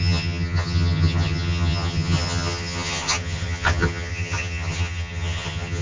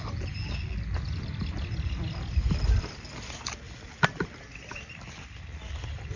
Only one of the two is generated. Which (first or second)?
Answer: first